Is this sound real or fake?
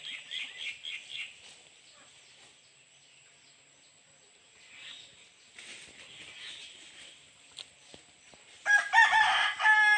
real